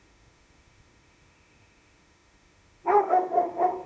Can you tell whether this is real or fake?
fake